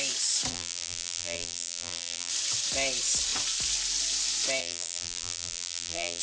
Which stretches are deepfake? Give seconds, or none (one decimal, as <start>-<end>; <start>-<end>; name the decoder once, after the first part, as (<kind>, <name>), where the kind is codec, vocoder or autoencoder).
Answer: 0.5-2.3 (vocoder, BigVGAN v2); 4.6-6.2